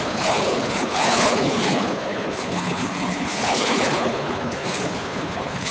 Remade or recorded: remade